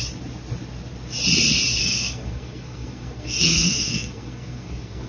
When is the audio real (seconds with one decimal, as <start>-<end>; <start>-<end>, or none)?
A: 0.0-1.8